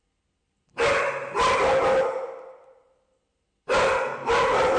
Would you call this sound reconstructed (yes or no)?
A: no